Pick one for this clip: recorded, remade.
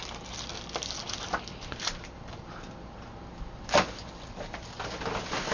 recorded